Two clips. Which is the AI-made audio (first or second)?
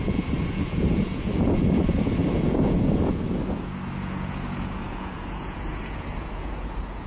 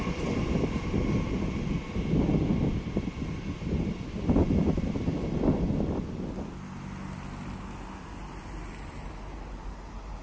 first